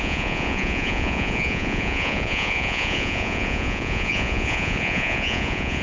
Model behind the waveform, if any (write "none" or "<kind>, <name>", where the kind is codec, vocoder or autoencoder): vocoder, Vocos